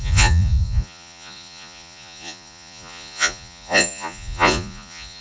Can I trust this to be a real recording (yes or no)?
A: no